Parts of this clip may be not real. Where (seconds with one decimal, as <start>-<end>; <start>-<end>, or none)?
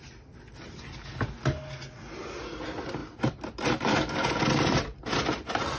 none